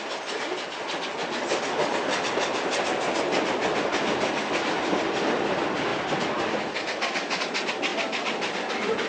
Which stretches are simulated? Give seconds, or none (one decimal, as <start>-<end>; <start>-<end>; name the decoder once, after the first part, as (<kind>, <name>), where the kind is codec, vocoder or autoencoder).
none